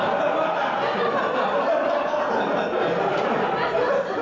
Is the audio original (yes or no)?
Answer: yes